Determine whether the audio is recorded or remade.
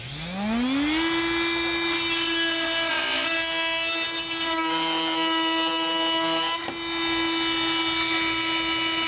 recorded